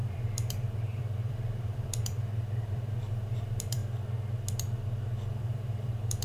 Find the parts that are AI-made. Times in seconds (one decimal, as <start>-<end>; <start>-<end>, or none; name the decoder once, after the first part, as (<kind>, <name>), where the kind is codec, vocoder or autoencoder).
0.0-3.8 (vocoder, BigVGAN v2); 5.3-6.2